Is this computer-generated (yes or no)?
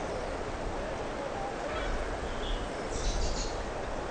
no